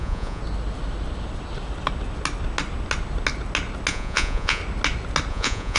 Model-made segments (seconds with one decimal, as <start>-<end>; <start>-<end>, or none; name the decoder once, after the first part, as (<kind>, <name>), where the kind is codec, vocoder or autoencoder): 0.0-0.4 (vocoder, Vocos); 3.9-4.6; 5.3-5.8